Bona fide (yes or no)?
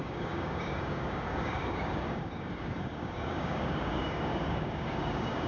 no